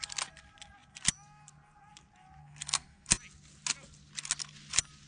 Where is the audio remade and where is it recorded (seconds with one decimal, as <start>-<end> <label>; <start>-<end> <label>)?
0.0-2.4 recorded; 2.4-3.1 remade; 3.1-5.1 recorded